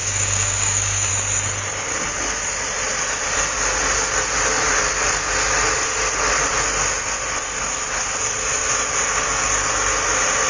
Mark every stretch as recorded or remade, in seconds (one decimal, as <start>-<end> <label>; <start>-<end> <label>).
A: 0.0-1.1 remade; 1.1-10.5 recorded